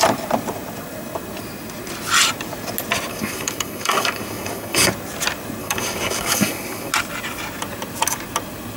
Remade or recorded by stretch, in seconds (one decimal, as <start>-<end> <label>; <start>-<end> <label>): 0.0-3.1 recorded; 3.1-4.9 remade; 4.9-5.6 recorded; 5.6-6.9 remade; 6.9-8.8 recorded